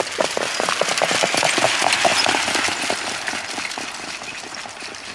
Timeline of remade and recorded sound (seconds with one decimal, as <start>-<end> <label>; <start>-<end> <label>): 0.0-5.1 recorded